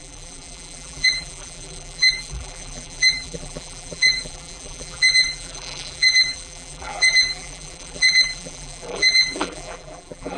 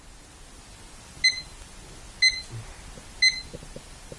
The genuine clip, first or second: second